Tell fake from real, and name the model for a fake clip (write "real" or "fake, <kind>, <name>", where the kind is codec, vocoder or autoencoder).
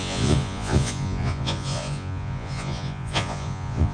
fake, vocoder, Vocos